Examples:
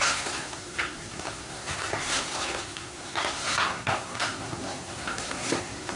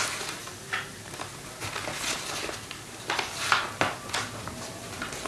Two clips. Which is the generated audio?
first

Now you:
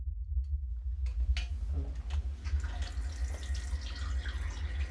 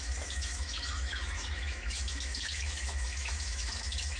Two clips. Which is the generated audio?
second